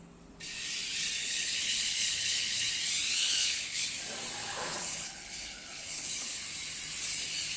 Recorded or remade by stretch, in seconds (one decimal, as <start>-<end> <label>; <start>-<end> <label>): 0.0-1.2 recorded; 1.2-2.7 remade; 2.7-3.2 recorded; 3.2-3.9 remade; 3.9-4.4 recorded; 4.4-6.4 remade; 6.4-7.6 recorded

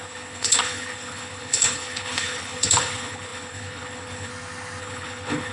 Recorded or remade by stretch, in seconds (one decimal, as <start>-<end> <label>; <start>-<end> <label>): 0.0-4.3 remade; 4.3-4.8 recorded; 4.8-5.5 remade

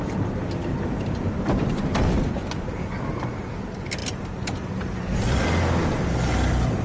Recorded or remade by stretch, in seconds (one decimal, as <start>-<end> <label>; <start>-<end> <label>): 0.0-6.8 recorded

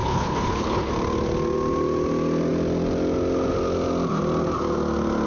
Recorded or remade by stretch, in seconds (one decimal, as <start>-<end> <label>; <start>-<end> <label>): 0.0-0.9 remade; 0.9-5.3 recorded

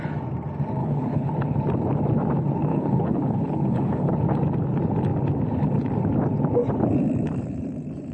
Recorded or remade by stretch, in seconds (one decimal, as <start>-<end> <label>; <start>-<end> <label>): 0.0-0.8 recorded; 0.8-1.3 remade; 1.3-2.7 recorded; 2.7-4.2 remade; 4.2-8.1 recorded

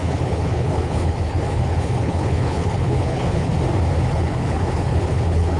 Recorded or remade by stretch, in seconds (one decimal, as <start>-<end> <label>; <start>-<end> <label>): 0.0-3.5 remade; 3.5-4.1 recorded; 4.1-5.6 remade

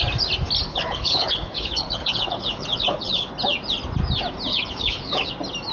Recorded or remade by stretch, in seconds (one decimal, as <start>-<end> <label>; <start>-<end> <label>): 0.0-0.7 recorded; 0.7-3.3 remade; 3.3-4.5 recorded; 4.5-5.3 remade; 5.3-5.7 recorded